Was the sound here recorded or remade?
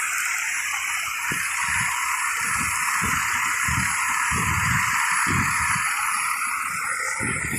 recorded